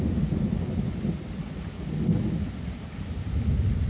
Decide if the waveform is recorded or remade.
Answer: recorded